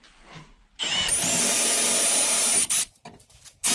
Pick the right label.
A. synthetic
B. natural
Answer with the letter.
B